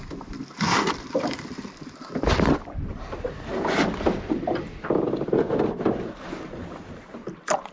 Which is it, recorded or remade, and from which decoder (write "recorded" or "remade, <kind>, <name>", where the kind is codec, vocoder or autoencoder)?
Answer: remade, vocoder, BigVGAN v2